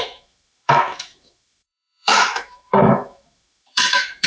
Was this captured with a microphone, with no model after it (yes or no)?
no